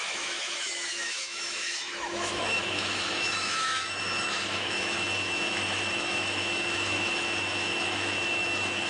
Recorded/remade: remade